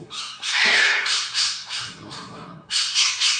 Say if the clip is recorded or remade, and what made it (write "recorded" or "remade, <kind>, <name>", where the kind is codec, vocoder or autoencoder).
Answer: remade, codec, SNAC